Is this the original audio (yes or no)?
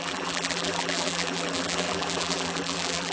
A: no